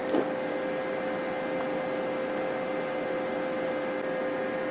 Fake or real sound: real